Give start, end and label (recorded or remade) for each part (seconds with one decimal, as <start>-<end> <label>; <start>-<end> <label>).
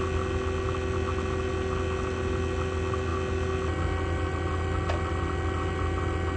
0.0-6.4 recorded